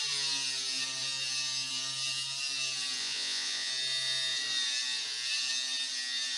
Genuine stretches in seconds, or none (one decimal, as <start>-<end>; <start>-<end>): 0.0-3.0; 3.7-6.4